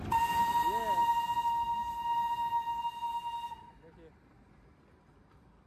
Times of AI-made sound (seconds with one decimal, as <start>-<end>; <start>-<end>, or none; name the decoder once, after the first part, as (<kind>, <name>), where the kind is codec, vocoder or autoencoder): none